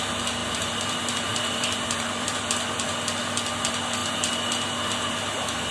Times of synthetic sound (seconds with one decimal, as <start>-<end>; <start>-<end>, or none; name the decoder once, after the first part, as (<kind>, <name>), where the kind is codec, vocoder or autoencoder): 0.4-2.5 (vocoder, BigVGAN v2)